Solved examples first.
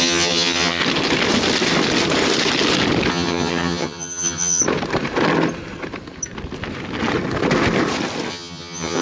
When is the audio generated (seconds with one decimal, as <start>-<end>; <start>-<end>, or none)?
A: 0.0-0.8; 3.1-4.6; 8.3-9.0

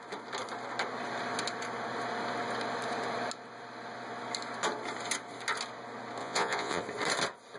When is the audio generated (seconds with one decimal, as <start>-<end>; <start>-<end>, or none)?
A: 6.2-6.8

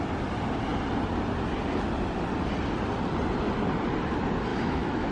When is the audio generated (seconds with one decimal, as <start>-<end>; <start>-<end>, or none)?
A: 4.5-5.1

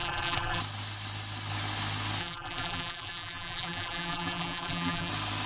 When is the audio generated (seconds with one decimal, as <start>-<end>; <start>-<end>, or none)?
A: 0.0-0.6; 2.2-5.1

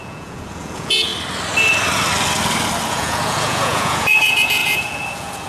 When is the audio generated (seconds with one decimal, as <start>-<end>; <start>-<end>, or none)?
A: 0.0-1.1; 2.9-5.5

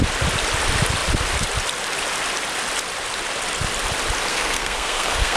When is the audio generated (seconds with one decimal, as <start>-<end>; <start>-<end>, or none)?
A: 4.3-5.4

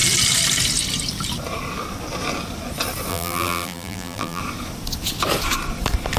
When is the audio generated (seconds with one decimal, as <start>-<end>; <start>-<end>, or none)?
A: 3.1-4.4